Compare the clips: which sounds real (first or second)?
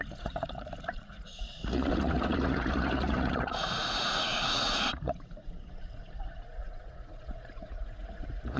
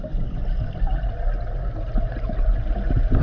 second